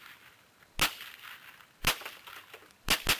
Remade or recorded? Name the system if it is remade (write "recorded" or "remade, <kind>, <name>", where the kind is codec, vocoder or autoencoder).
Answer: recorded